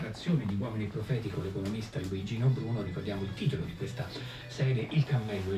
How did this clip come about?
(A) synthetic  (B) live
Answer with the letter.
B